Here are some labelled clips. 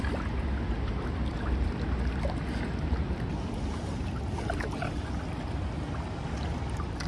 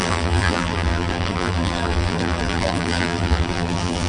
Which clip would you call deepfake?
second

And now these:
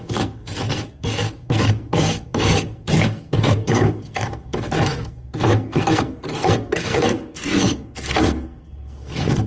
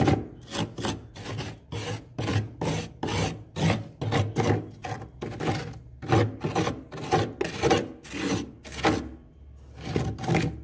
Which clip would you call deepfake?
first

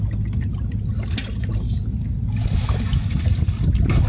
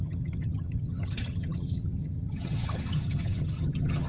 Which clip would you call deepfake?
second